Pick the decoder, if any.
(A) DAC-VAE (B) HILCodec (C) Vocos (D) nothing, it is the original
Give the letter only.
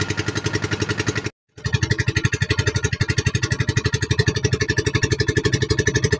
D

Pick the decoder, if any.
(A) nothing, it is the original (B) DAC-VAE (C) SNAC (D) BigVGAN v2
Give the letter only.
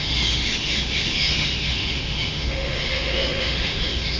B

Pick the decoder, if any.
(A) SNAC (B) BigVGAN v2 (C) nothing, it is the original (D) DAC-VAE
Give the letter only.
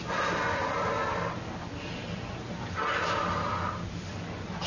C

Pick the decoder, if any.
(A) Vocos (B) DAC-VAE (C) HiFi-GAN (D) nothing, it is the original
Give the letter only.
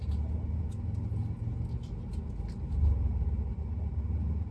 D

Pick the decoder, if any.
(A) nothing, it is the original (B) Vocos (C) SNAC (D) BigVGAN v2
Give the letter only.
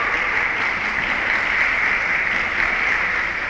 A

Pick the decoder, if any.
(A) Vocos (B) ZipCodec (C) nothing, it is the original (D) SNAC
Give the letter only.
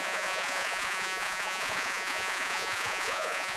A